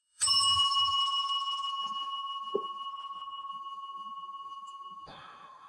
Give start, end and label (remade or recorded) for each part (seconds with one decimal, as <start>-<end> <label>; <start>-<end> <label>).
0.0-1.0 remade; 1.0-1.7 recorded; 1.7-2.9 remade; 2.9-3.5 recorded; 3.5-5.7 remade